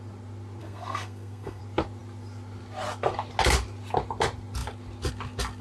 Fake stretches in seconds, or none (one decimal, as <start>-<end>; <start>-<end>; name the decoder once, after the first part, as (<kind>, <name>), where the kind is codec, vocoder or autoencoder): 0.6-1.6 (codec, SNAC)